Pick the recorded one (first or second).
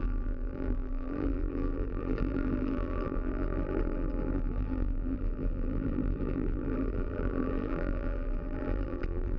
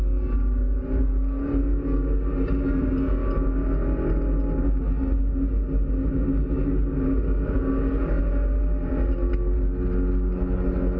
second